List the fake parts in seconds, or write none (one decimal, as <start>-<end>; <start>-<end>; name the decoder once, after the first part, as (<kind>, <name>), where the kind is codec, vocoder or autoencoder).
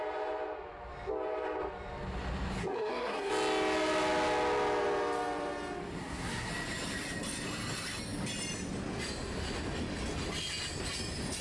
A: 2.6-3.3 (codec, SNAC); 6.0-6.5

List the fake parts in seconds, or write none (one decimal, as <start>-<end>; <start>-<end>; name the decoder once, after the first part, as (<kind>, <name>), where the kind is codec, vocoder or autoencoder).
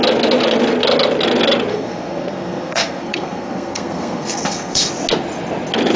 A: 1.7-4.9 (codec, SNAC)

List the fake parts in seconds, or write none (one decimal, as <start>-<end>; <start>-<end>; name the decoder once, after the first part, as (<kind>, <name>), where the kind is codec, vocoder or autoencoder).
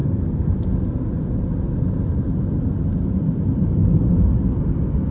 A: none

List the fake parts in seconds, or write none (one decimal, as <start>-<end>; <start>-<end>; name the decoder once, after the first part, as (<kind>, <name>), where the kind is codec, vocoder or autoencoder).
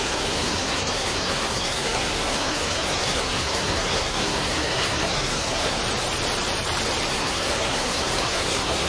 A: 0.0-5.8 (codec, SNAC); 7.1-8.9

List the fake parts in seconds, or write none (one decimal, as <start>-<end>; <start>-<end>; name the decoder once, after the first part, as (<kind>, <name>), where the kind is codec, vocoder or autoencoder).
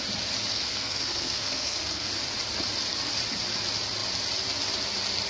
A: 0.5-2.1 (codec, SNAC)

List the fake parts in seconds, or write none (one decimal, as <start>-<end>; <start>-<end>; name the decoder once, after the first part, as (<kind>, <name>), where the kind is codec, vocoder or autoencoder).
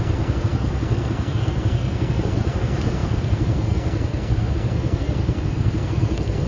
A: 0.0-6.5 (codec, SNAC)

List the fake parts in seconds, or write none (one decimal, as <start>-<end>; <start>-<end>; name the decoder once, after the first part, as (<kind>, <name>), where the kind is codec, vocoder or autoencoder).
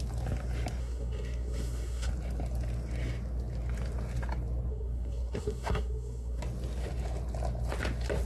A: 0.8-2.1 (codec, SNAC); 4.7-6.4